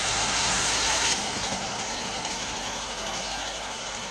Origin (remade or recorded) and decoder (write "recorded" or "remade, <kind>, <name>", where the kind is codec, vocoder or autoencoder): remade, codec, SNAC